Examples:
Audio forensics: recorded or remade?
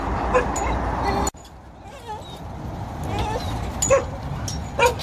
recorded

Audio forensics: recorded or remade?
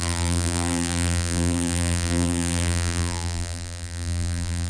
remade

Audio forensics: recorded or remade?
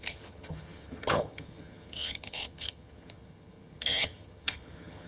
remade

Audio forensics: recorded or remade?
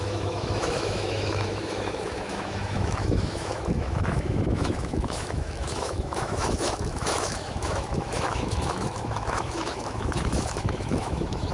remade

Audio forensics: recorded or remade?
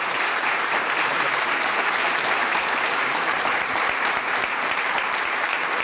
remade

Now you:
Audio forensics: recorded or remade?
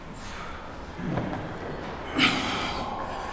recorded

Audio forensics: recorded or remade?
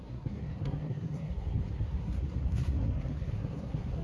remade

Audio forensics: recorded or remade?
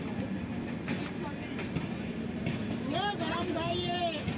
recorded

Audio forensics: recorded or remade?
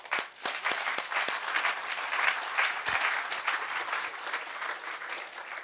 recorded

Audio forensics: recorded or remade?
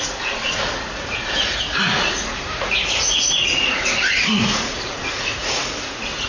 remade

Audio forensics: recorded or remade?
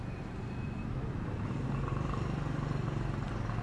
recorded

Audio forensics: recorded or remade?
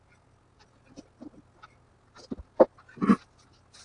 recorded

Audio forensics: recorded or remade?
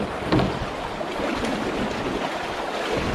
recorded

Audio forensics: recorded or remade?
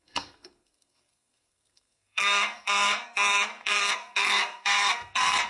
remade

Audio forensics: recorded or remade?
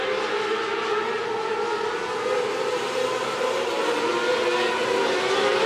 recorded